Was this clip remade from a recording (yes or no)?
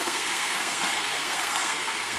yes